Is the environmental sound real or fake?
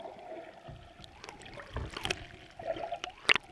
real